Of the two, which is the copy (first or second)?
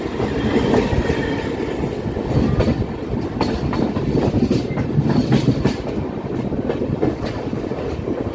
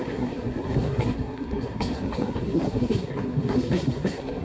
second